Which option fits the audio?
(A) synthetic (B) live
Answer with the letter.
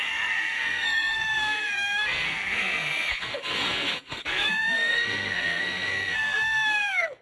A